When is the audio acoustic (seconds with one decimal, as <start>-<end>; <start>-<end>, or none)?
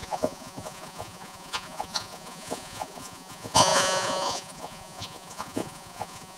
none